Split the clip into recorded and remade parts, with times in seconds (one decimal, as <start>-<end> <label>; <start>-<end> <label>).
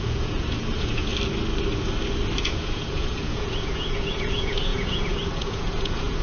0.0-1.1 remade; 1.1-2.4 recorded; 2.4-6.2 remade